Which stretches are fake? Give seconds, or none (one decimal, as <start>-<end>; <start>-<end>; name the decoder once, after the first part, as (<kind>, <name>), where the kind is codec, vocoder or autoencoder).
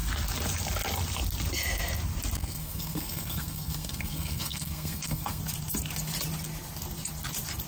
2.4-5.4 (codec, SNAC)